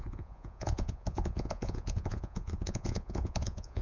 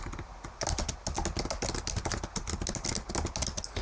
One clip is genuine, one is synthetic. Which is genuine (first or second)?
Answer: second